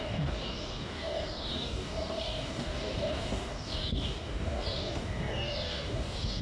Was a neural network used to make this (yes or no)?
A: yes